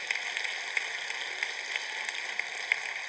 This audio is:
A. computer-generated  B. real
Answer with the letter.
B